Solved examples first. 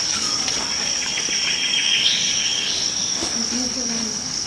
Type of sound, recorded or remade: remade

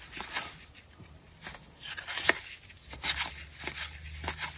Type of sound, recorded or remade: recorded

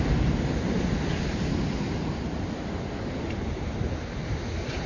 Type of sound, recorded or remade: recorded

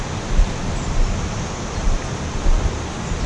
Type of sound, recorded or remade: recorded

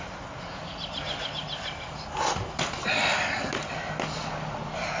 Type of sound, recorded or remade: recorded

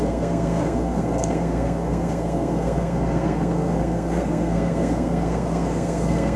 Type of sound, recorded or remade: remade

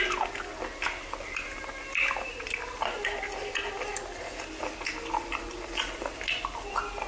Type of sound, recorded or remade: recorded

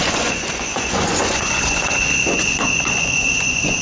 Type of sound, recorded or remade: remade